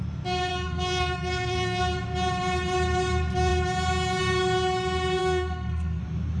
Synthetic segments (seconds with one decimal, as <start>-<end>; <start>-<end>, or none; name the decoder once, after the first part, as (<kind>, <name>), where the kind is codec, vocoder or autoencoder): 0.5-1.8 (codec, SNAC); 5.2-6.0

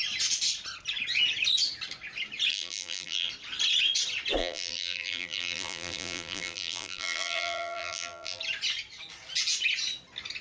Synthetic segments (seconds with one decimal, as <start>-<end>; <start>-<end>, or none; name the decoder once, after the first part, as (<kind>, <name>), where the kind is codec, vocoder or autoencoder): 2.5-3.3 (vocoder, BigVGAN v2); 4.4-8.4

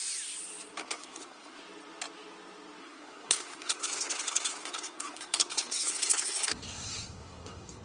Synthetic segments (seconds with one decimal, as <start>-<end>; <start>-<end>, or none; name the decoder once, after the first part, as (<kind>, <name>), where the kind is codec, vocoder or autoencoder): 0.8-1.6 (codec, SNAC); 2.8-7.8

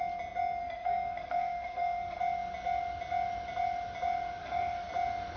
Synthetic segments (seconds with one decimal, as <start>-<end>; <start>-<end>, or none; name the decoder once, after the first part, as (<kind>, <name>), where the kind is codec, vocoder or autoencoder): 0.6-2.2 (codec, SNAC); 4.4-4.9